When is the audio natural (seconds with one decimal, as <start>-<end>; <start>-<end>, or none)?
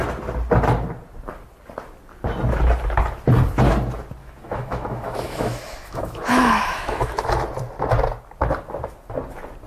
0.0-4.2; 7.2-9.7